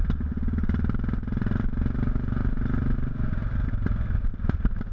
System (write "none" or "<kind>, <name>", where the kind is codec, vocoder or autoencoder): none